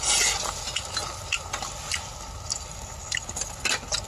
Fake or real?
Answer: real